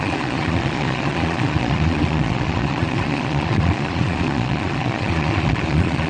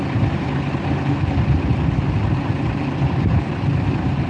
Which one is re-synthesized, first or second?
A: first